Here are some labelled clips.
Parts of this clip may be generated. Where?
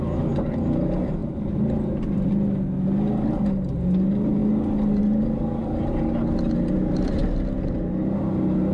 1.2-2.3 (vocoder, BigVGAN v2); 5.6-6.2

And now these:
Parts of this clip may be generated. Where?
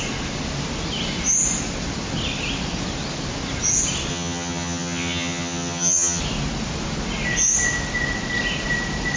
4.1-6.2 (vocoder, HiFi-GAN)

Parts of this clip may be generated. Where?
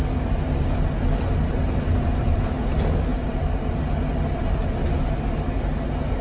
1.4-2.5 (vocoder, BigVGAN v2); 3.1-3.8